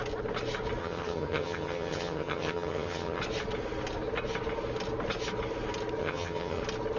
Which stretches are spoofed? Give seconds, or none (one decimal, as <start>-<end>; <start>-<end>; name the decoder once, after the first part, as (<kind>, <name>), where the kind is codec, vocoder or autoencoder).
0.8-3.2 (vocoder, HiFi-GAN); 6.0-6.6